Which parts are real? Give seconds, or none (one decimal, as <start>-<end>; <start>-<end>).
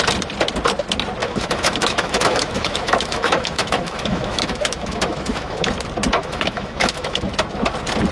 0.0-1.2; 5.7-6.2; 7.3-8.1